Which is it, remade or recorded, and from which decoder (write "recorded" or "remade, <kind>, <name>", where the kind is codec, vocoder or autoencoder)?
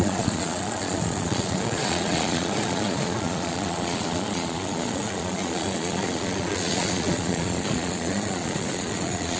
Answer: remade, vocoder, Vocos